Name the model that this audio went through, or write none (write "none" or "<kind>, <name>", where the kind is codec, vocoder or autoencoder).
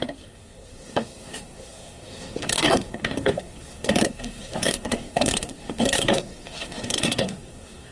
codec, SNAC